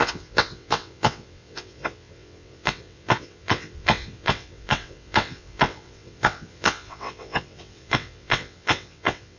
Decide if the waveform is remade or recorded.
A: remade